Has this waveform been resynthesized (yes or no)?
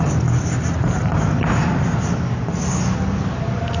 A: no